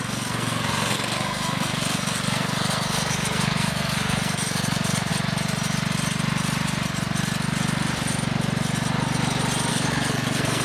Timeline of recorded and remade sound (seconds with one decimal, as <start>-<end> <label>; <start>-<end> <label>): 0.0-5.1 remade; 5.1-9.7 recorded; 9.7-10.6 remade